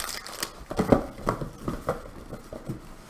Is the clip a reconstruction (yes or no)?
no